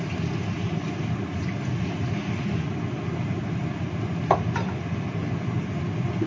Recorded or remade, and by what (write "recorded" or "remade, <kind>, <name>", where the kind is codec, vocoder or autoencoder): recorded